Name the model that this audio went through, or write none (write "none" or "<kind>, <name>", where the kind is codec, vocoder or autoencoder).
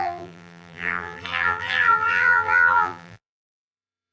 vocoder, BigVGAN v2